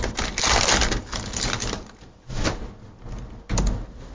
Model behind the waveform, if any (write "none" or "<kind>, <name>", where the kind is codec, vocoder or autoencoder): none